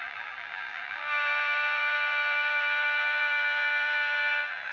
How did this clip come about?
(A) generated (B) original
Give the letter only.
A